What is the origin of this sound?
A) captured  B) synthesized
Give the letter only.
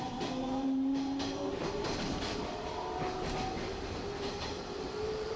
B